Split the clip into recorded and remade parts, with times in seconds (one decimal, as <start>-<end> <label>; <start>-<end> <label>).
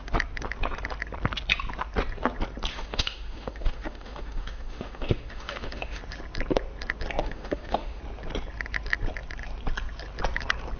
0.0-2.7 recorded; 2.7-6.0 remade; 6.0-7.2 recorded; 7.2-8.0 remade; 8.0-10.8 recorded